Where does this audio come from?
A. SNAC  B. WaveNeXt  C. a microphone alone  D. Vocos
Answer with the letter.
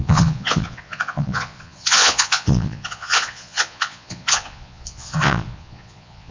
D